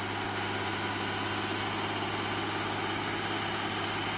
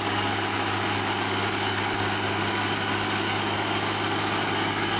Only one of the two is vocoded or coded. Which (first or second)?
second